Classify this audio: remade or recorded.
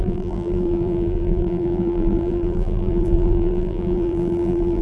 remade